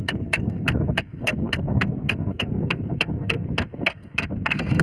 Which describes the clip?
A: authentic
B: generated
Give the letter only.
B